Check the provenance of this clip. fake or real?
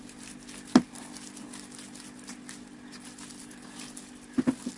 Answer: real